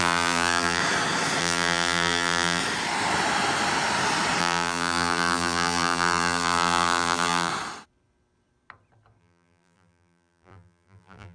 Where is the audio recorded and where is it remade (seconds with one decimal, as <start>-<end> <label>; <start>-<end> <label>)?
0.0-0.8 remade; 0.8-1.4 recorded; 1.4-2.6 remade; 2.6-4.4 recorded; 4.4-7.5 remade; 7.5-9.2 recorded; 9.2-11.3 remade